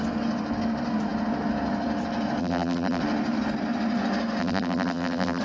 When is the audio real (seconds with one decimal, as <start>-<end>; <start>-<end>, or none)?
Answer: 0.0-2.4; 3.0-4.4